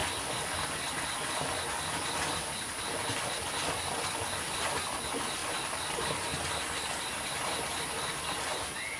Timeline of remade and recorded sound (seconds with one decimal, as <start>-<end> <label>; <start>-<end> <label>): 0.0-9.0 recorded